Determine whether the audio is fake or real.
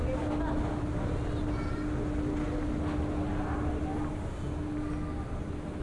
real